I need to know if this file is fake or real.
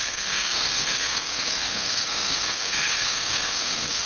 fake